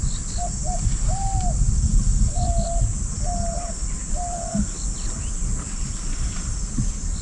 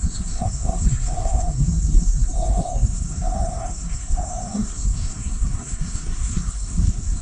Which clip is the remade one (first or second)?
second